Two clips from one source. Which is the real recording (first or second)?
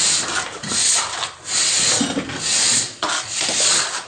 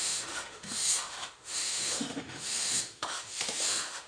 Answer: first